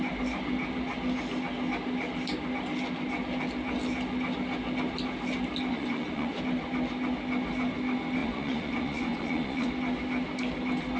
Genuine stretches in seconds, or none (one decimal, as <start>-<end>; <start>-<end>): 0.0-5.7; 6.3-8.2; 9.7-11.0